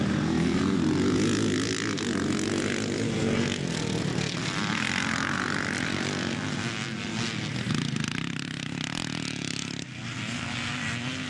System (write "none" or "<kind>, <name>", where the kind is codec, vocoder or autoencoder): none